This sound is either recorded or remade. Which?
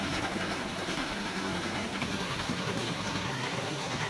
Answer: remade